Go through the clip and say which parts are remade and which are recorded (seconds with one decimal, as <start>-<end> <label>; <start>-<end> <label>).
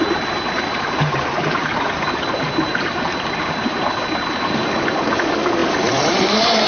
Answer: 0.0-6.7 remade